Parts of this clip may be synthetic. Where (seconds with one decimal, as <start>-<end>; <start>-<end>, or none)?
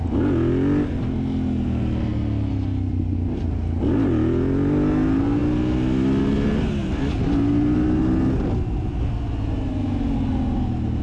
none